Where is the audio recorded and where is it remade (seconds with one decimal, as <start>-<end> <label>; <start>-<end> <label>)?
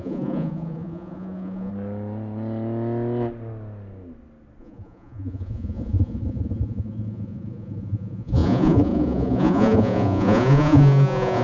0.0-1.7 remade; 1.7-4.6 recorded; 4.6-11.4 remade